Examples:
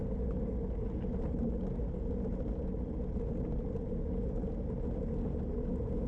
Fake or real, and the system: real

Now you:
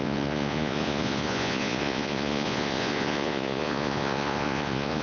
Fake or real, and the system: fake, vocoder, Vocos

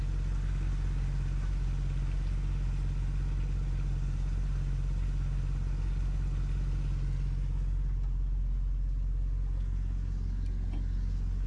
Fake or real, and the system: real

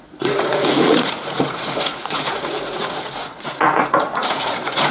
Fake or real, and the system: fake, vocoder, Vocos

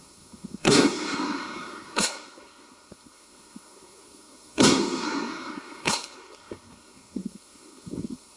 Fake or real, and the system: fake, codec, SNAC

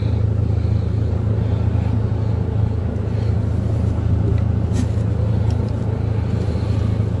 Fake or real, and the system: real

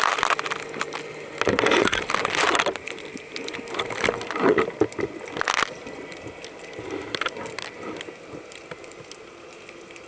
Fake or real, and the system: real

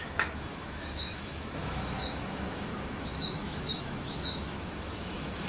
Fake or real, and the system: fake, autoencoder, DAC-VAE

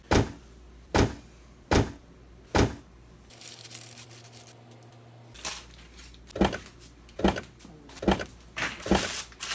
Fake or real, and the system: real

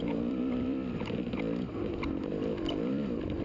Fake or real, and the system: fake, vocoder, BigVGAN v2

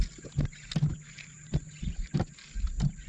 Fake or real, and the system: real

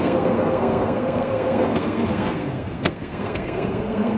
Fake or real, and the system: fake, codec, SNAC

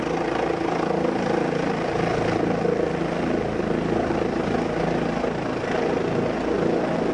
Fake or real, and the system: real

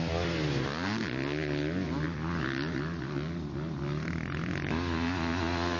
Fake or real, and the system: real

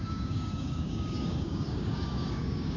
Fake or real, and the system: fake, codec, DAC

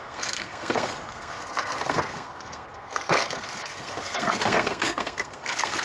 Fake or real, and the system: fake, codec, SNAC